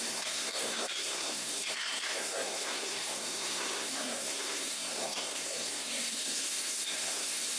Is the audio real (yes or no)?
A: no